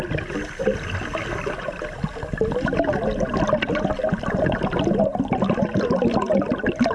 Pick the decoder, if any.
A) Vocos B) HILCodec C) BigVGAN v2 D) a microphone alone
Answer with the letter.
D